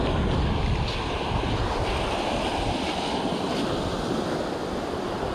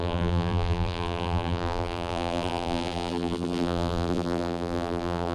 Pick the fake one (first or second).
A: second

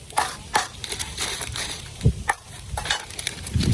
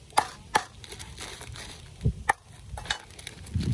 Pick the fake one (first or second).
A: first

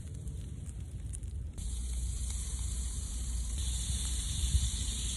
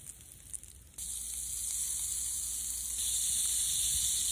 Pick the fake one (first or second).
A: first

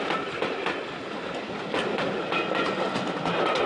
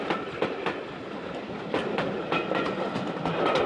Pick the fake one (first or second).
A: second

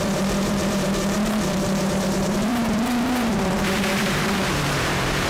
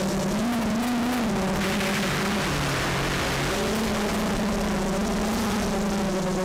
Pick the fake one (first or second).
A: first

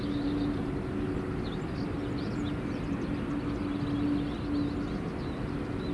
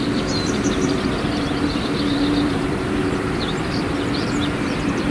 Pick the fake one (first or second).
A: second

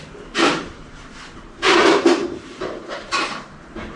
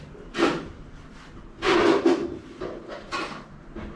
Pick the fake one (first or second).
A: first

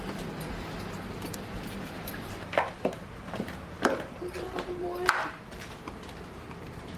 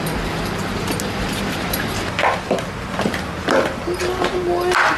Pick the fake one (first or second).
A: first